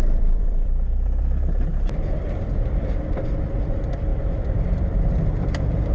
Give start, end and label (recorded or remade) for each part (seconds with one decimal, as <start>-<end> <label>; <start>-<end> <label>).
0.0-5.9 remade